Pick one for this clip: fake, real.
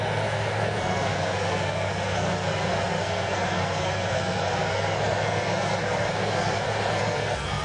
fake